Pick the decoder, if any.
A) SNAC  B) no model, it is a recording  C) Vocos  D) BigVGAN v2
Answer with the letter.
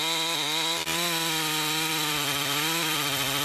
D